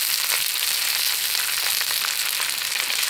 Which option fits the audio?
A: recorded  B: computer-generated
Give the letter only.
A